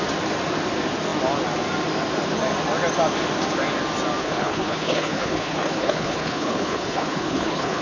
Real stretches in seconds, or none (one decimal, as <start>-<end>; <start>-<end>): 0.0-4.2